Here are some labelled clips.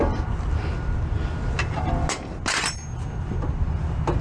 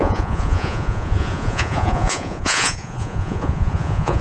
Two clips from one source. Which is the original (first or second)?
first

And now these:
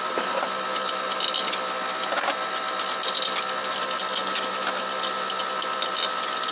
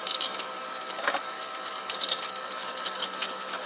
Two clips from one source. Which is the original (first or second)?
first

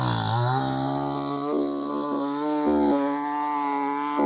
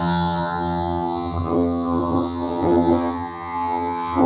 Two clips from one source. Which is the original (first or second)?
first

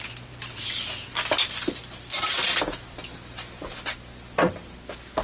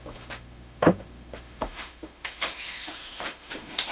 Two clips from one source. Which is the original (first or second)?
first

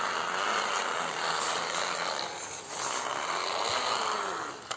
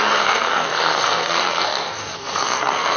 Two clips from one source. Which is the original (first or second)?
first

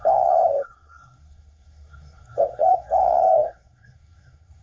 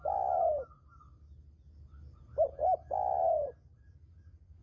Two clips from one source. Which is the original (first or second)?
second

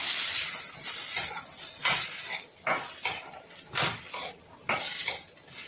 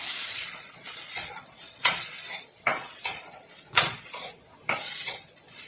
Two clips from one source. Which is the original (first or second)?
first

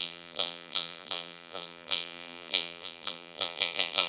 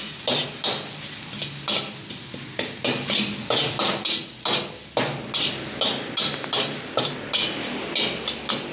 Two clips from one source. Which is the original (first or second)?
second